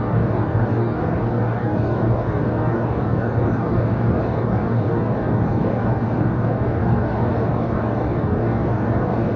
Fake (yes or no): yes